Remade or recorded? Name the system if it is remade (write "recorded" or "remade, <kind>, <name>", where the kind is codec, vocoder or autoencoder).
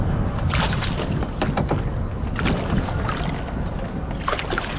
recorded